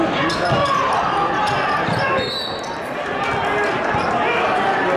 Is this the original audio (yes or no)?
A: yes